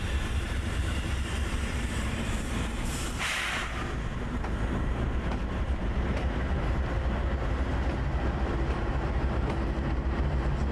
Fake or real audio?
fake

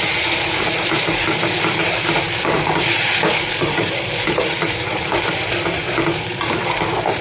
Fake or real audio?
fake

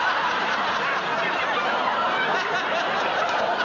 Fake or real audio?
real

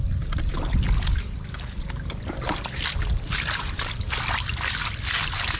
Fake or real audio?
real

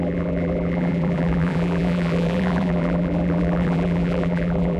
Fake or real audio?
fake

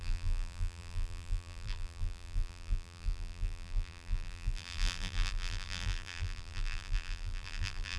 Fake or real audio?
fake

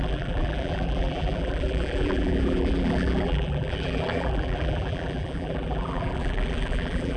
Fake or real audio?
fake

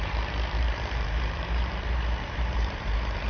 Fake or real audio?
fake